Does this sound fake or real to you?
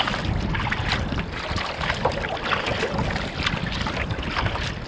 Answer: real